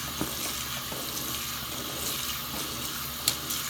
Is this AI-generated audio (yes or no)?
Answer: no